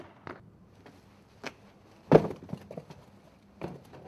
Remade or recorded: recorded